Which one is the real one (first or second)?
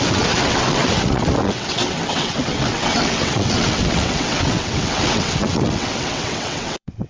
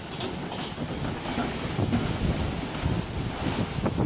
second